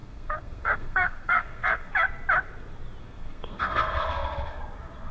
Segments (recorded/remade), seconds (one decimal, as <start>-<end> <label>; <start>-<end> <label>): 0.0-1.9 remade; 1.9-3.0 recorded; 3.0-4.6 remade; 4.6-5.1 recorded

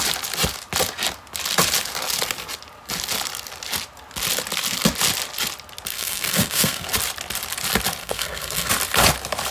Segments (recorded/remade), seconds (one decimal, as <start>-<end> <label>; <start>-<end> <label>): 0.0-5.9 recorded; 5.9-6.9 remade; 6.9-8.0 recorded; 8.0-8.7 remade; 8.7-9.5 recorded

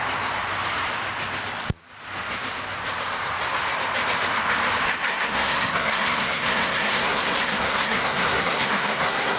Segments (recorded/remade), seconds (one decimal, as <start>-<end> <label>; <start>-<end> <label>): 0.0-5.1 recorded; 5.1-9.4 remade

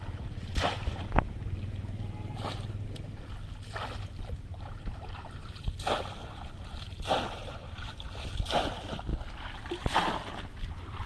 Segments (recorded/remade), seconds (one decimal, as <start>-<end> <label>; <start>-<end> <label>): 0.0-4.5 recorded; 4.5-5.7 remade; 5.7-7.4 recorded; 7.4-7.9 remade; 7.9-11.1 recorded

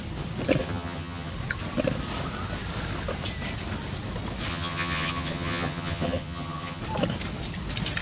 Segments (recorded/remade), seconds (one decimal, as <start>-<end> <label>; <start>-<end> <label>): 0.0-0.6 recorded; 0.6-1.3 remade; 1.3-4.5 recorded; 4.5-6.8 remade; 6.8-8.0 recorded

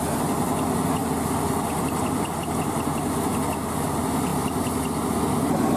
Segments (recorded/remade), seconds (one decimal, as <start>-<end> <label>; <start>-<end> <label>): 0.0-1.0 recorded; 1.0-1.6 remade; 1.6-4.3 recorded; 4.3-5.2 remade; 5.2-5.8 recorded